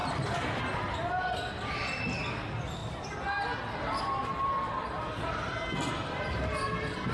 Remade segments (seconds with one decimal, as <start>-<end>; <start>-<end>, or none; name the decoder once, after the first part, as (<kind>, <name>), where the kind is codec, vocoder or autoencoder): 0.0-0.6 (vocoder, BigVGAN v2)